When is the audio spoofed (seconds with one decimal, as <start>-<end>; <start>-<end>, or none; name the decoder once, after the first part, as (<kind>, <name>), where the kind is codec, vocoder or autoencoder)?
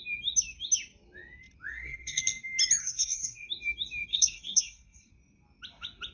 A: 1.7-2.2 (codec, SNAC); 2.8-3.5; 4.1-5.1